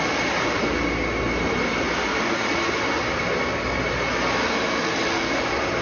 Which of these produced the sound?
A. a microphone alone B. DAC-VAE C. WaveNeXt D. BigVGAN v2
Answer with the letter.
A